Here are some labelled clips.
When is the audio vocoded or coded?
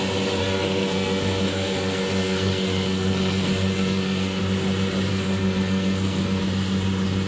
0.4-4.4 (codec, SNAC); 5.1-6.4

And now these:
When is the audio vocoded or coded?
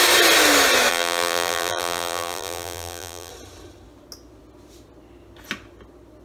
0.9-3.3 (vocoder, BigVGAN v2)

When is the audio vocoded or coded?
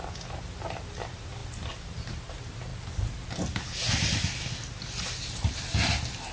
none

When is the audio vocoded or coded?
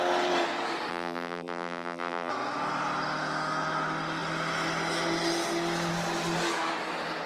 0.9-2.3 (vocoder, BigVGAN v2)